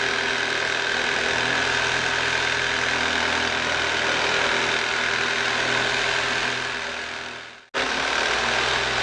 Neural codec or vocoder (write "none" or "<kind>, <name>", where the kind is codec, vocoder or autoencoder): none